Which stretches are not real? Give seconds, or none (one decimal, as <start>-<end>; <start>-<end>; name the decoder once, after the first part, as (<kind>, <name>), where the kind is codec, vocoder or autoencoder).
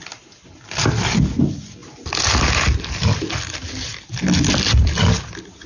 none